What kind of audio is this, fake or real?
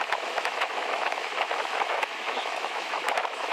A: fake